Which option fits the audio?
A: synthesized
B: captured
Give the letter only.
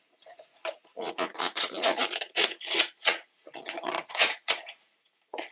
A